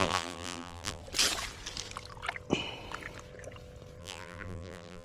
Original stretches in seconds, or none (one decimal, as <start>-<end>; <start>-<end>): 1.0-4.0